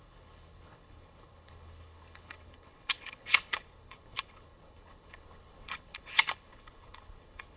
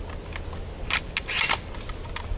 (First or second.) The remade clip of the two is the first